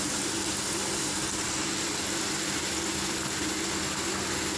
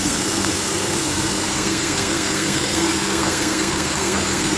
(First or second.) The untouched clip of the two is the first